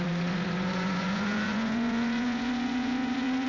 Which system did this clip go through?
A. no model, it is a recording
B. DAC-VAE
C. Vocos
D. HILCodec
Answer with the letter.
C